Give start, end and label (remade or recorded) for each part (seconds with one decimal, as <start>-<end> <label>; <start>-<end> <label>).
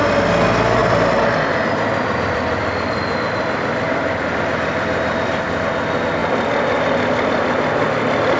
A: 0.0-0.8 recorded; 0.8-5.8 remade; 5.8-6.2 recorded; 6.2-6.8 remade; 6.8-8.4 recorded